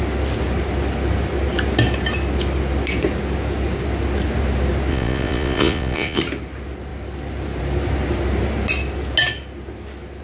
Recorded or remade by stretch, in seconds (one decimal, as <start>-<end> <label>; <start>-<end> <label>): 0.0-4.9 recorded; 4.9-6.2 remade; 6.2-10.2 recorded